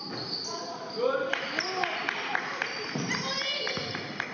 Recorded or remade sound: recorded